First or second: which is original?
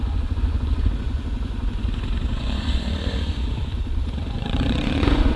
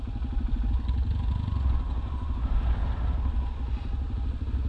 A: second